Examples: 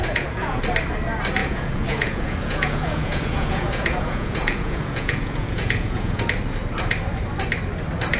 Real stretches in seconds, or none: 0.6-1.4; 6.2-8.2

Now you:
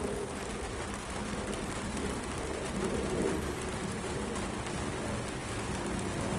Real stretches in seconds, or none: 0.0-3.8; 4.4-6.4

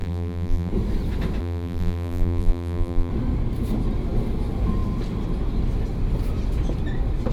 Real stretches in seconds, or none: 0.7-1.4; 3.1-7.3

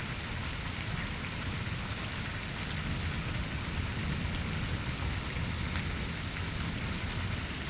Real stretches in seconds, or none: 0.0-7.7

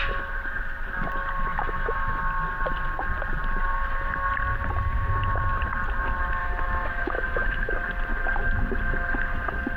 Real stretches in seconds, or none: 0.0-1.5; 2.2-6.4; 7.7-9.8

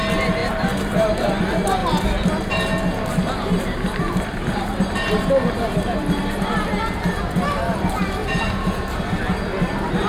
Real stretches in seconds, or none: 0.0-0.4; 1.3-3.5; 7.3-8.2; 9.0-10.1

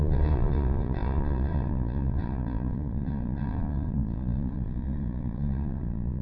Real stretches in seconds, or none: none

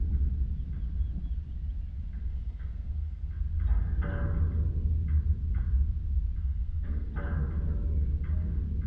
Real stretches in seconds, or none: 0.0-2.3; 3.3-6.4; 7.1-8.9